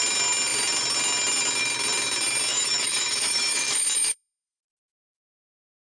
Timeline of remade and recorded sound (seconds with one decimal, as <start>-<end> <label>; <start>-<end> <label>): 0.0-2.5 recorded; 2.5-4.6 remade; 4.6-5.9 recorded